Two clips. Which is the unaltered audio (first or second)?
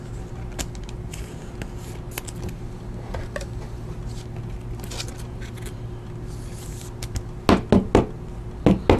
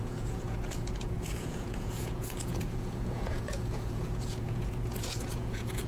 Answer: first